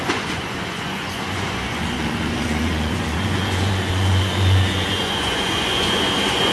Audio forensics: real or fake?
fake